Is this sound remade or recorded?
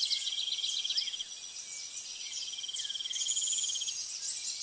recorded